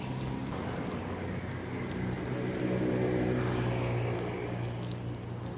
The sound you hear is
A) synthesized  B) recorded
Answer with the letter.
B